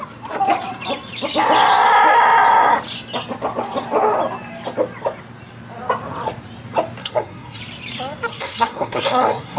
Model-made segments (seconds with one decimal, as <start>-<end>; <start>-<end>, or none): 7.0-7.6; 8.3-9.6